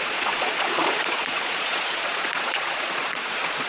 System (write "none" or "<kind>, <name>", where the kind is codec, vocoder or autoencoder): vocoder, Vocos